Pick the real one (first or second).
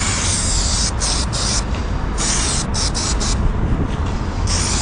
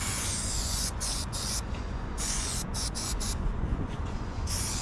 first